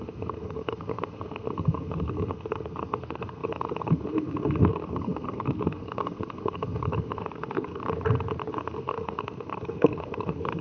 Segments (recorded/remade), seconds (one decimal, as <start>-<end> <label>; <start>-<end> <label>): 0.0-7.8 remade; 7.8-8.5 recorded; 8.5-10.6 remade